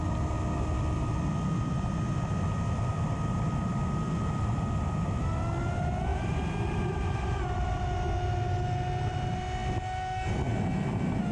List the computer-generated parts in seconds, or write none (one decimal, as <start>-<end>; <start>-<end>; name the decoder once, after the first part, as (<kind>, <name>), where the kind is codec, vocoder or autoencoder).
6.1-8.0 (vocoder, BigVGAN v2)